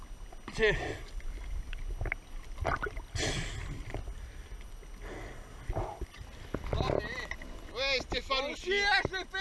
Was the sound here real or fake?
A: real